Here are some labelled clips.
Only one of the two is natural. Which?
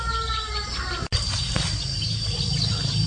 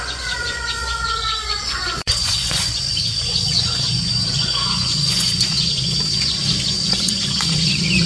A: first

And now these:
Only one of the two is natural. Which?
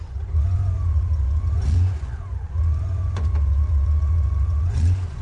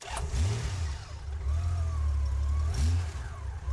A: second